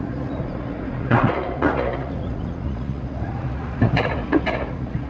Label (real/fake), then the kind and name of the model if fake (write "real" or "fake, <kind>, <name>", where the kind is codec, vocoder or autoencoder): fake, vocoder, Vocos